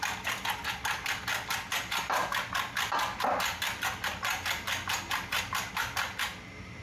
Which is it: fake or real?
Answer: real